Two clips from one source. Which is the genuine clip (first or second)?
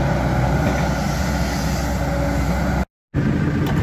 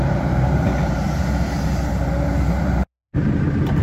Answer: first